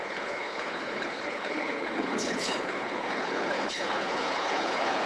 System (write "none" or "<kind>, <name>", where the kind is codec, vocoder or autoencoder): codec, HILCodec